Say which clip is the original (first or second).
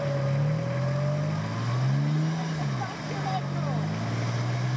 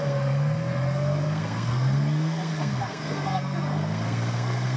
first